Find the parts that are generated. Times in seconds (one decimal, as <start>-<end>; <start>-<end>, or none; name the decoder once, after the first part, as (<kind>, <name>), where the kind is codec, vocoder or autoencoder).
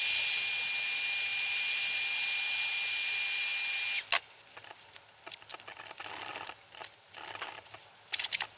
6.3-8.2 (vocoder, BigVGAN v2)